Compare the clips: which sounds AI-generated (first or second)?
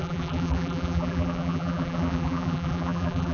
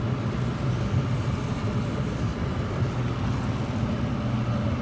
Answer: first